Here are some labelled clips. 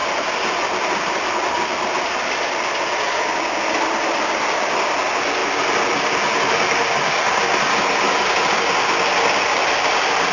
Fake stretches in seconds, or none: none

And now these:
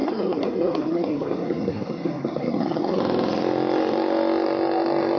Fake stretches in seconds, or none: 0.0-3.0

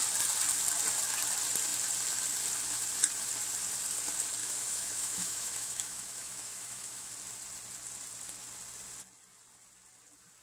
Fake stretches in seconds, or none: 4.4-7.1

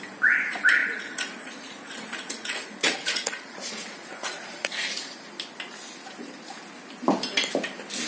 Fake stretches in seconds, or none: 0.8-5.3

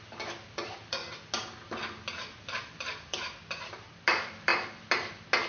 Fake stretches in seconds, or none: 0.0-1.0; 2.4-4.5

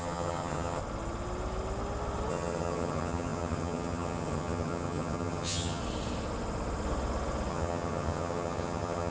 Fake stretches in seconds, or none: 0.0-0.8; 2.3-5.8; 7.5-9.1